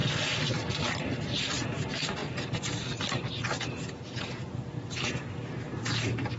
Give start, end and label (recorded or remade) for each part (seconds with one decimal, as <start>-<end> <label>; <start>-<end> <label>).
0.0-6.4 recorded